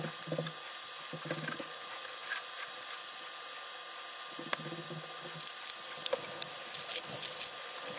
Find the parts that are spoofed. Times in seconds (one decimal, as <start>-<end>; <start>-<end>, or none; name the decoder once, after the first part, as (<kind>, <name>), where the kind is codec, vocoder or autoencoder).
none